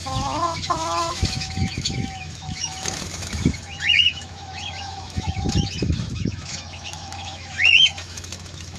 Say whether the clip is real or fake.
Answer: fake